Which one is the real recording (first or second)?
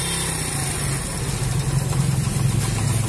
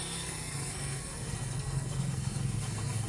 first